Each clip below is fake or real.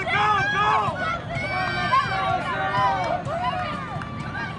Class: real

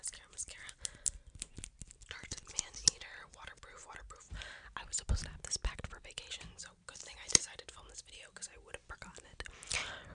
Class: real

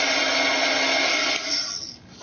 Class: real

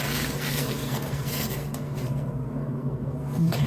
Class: fake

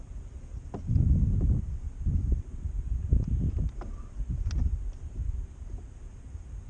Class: real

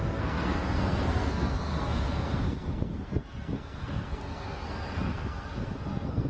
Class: fake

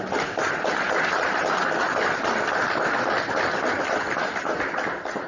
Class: real